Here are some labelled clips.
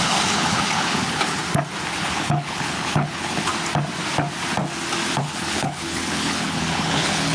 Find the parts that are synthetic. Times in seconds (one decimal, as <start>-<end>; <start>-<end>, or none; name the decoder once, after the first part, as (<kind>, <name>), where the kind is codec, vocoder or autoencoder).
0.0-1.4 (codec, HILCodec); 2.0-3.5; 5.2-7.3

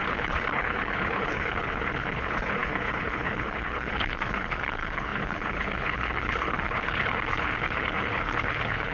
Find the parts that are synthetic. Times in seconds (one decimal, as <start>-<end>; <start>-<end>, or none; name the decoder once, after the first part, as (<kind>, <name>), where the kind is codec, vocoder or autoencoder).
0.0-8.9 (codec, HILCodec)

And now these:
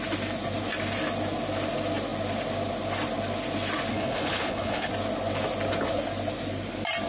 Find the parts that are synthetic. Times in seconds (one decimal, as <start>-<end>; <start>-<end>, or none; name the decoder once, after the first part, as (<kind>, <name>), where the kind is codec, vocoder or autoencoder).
3.9-4.9 (codec, HILCodec)

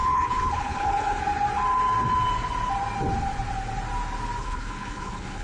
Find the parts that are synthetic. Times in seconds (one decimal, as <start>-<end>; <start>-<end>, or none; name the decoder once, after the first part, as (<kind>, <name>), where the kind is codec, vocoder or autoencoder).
0.0-1.2 (codec, HILCodec); 4.4-5.4